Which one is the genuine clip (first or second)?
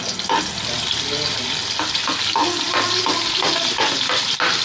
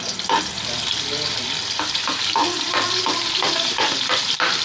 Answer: first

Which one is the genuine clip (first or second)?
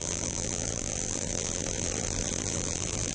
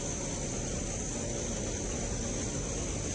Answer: second